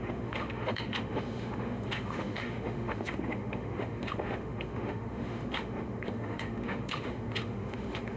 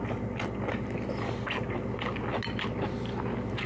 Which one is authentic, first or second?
second